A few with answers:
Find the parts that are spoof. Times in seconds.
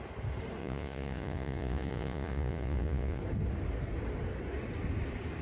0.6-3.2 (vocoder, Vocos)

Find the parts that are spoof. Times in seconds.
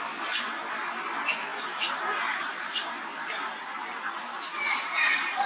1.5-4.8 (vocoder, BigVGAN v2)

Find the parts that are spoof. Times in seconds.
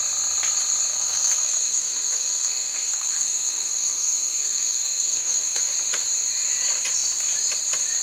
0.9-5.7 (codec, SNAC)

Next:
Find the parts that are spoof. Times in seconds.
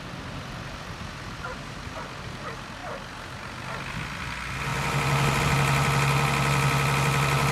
none